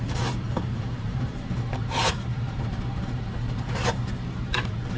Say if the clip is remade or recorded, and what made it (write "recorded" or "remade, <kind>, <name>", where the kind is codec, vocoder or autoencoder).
remade, vocoder, BigVGAN v2